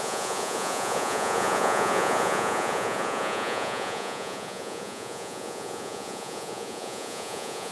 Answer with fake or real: fake